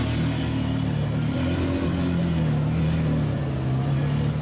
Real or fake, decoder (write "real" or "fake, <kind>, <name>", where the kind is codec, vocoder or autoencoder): real